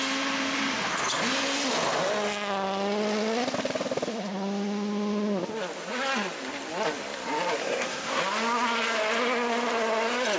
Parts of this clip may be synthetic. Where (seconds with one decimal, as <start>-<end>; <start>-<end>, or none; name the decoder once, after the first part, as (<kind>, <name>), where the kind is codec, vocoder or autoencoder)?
7.6-8.2 (codec, SNAC)